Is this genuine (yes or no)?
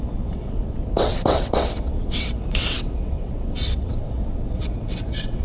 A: no